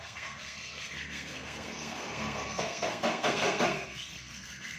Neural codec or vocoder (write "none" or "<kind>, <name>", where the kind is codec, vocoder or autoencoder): codec, SNAC